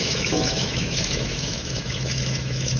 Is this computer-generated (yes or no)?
yes